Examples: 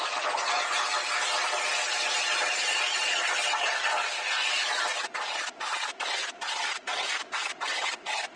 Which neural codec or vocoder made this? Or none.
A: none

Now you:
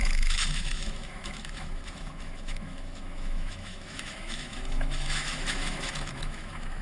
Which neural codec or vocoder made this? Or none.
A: autoencoder, DAC-VAE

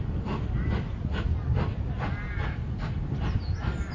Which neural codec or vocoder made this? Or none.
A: none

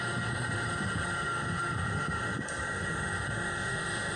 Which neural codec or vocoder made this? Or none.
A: autoencoder, DAC-VAE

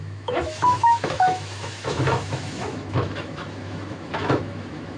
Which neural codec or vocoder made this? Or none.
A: autoencoder, DAC-VAE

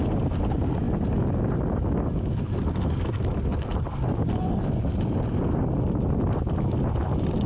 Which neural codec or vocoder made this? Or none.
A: none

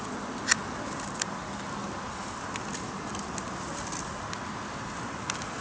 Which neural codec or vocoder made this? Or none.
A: none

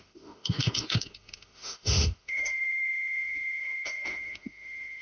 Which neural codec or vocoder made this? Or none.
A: autoencoder, DAC-VAE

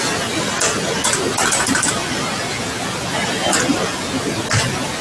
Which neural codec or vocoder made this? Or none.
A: none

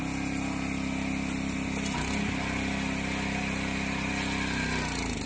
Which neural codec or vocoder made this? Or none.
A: none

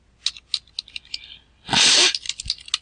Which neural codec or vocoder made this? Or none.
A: none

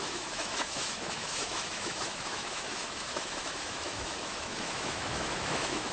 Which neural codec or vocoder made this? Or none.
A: autoencoder, DAC-VAE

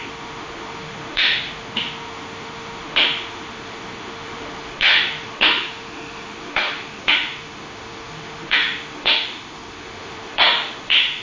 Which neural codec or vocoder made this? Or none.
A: autoencoder, DAC-VAE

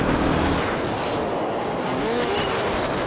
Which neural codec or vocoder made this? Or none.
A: none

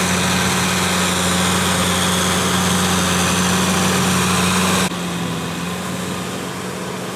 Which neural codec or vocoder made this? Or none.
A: none